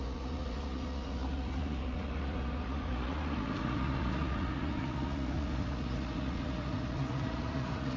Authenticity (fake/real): fake